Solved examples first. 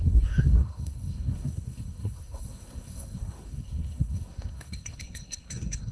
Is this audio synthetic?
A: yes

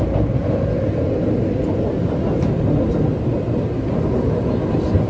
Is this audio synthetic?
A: no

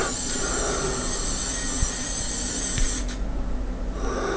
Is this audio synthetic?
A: no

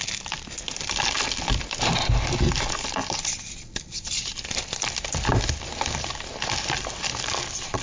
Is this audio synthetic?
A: no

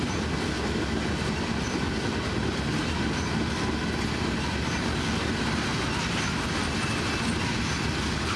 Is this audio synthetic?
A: no